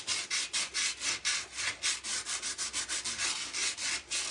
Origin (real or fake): real